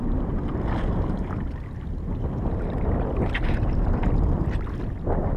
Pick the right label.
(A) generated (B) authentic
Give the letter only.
B